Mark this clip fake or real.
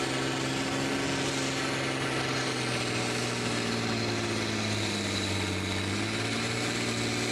real